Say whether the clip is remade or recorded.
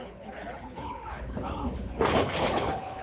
remade